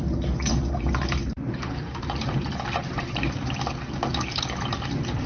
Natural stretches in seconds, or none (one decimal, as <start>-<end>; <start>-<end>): 0.0-1.2; 3.6-5.3